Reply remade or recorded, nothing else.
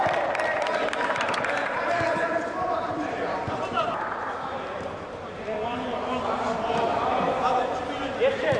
remade